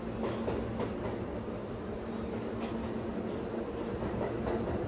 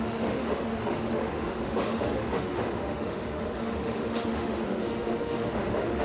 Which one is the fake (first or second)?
second